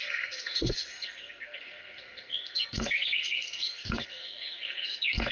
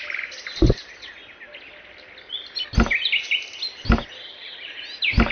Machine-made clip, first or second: first